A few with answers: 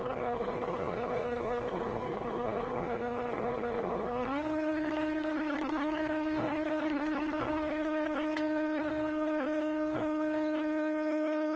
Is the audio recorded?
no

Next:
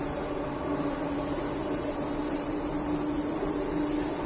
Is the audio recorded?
yes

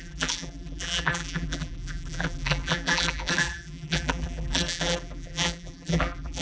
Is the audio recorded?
no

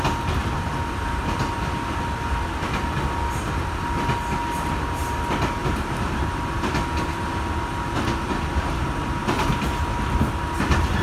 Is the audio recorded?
yes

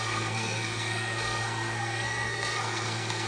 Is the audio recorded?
no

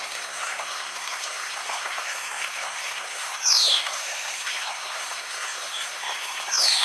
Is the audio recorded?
no